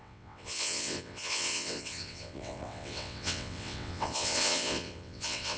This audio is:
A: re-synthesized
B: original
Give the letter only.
A